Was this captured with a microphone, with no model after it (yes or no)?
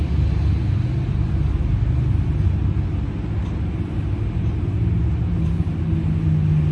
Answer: yes